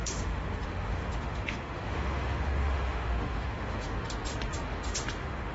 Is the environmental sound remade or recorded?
remade